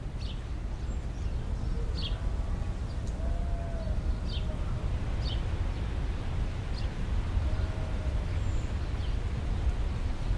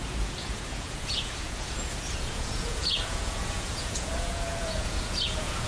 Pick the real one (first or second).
first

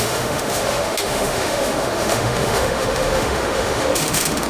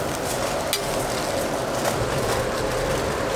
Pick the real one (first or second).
second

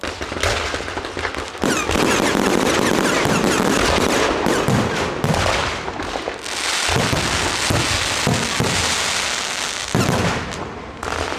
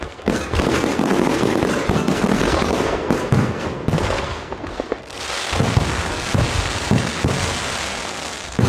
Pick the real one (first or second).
first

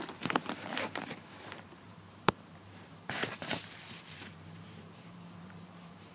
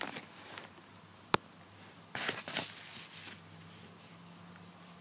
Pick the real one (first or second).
second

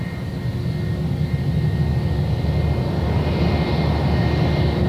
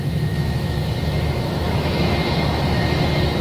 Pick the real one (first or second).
first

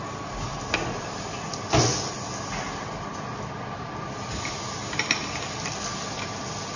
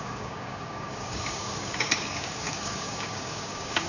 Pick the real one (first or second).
first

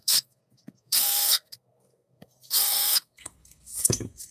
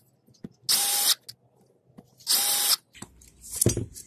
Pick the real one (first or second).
second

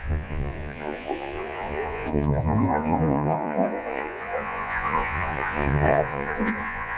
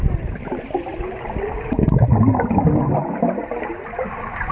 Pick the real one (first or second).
second